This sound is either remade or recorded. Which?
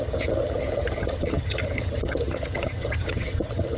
remade